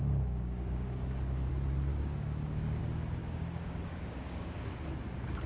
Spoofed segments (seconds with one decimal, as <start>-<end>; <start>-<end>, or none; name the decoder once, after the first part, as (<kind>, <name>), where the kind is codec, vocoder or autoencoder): 0.0-1.5 (codec, DAC); 1.9-2.8; 3.2-4.7